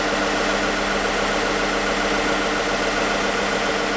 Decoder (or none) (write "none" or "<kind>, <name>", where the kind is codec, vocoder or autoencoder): none